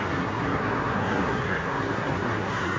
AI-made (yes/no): yes